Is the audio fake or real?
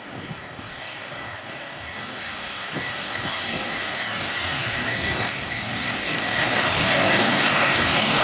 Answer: fake